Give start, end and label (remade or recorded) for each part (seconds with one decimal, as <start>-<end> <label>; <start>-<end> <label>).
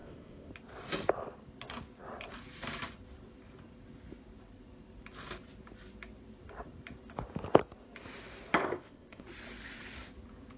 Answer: 0.0-0.5 remade; 0.5-8.6 recorded; 8.6-9.2 remade; 9.2-10.6 recorded